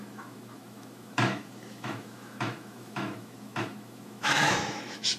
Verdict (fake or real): fake